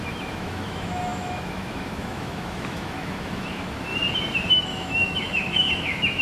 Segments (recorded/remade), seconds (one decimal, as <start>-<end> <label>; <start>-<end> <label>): 0.0-3.9 remade; 3.9-4.5 recorded; 4.5-6.2 remade